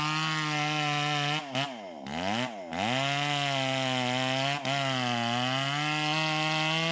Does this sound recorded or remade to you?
recorded